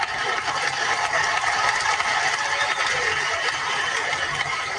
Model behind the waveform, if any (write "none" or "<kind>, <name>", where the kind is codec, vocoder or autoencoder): vocoder, BigVGAN v2